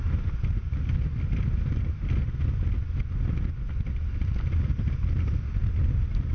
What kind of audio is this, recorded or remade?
recorded